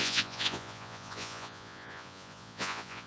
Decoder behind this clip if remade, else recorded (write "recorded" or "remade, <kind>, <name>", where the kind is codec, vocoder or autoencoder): remade, vocoder, Vocos